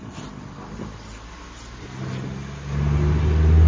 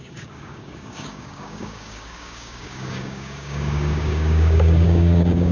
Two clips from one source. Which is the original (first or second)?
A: first